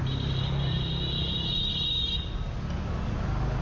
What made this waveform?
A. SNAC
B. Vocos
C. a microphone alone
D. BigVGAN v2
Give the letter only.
C